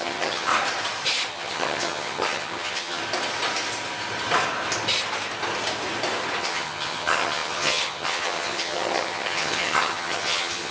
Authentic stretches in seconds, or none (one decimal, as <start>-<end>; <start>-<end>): 0.5-1.3; 3.0-6.4